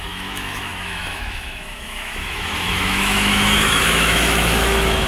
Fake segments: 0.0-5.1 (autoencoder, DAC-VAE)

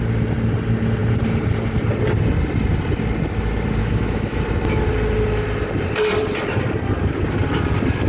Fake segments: 3.8-4.4 (autoencoder, DAC-VAE)

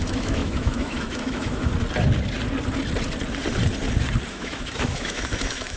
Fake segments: 0.0-1.7 (autoencoder, DAC-VAE); 4.3-5.8